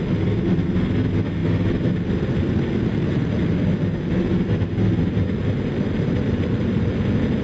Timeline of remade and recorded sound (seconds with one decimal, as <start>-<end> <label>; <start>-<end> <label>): 0.0-7.4 recorded